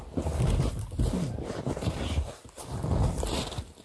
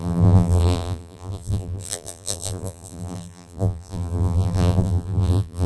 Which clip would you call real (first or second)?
first